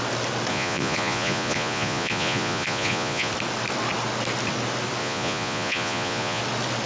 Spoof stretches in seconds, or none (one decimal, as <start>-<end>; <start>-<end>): 0.5-3.3; 5.0-6.4